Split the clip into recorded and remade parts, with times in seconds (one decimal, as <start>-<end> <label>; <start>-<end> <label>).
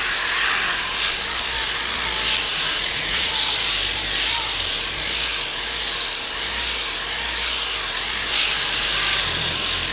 0.0-2.5 recorded; 2.5-3.3 remade; 3.3-9.9 recorded